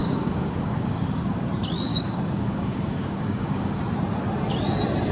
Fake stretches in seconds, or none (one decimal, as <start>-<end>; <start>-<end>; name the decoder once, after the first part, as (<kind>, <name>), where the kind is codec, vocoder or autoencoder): 0.0-1.5 (codec, DAC); 1.9-3.8